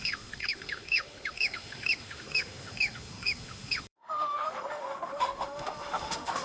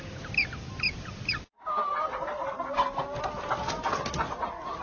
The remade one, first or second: first